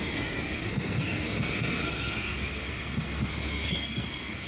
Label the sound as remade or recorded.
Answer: remade